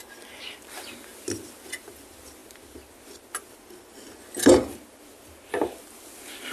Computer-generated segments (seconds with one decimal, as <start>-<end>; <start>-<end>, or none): none